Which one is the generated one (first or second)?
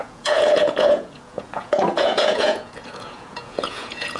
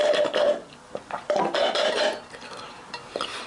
first